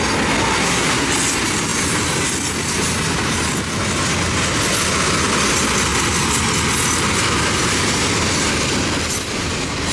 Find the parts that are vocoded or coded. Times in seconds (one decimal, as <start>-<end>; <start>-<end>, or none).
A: 0.6-1.1